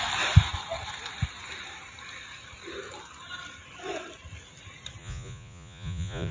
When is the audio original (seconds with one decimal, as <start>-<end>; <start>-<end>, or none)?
0.0-5.0